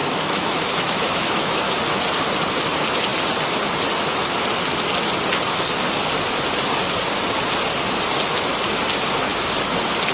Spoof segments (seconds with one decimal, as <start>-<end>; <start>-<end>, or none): 0.0-1.7